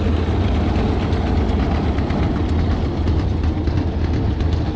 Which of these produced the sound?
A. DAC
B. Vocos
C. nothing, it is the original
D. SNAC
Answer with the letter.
C